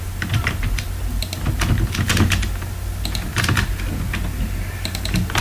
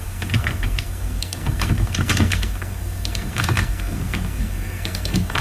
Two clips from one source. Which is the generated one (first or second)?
second